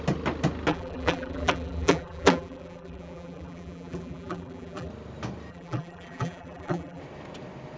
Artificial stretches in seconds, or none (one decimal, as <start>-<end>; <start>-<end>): 0.7-4.9; 5.5-7.0

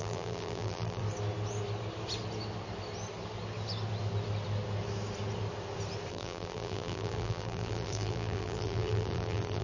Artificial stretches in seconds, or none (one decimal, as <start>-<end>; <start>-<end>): 0.0-1.0; 6.1-9.6

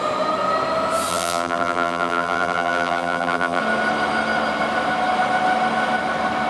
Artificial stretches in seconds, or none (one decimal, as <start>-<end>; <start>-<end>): 1.1-3.6

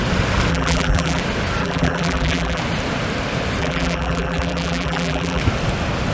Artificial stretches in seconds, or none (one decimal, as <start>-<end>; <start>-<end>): 0.5-1.2; 1.6-2.6; 3.6-5.4

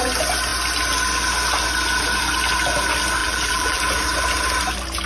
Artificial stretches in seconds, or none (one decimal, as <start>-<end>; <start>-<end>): 3.2-3.8

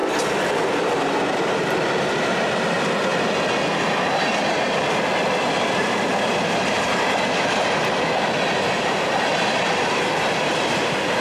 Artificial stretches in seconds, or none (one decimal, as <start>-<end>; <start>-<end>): 0.8-3.1; 3.7-11.2

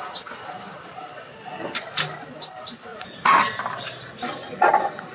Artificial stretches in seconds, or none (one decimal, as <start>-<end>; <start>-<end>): 2.9-3.6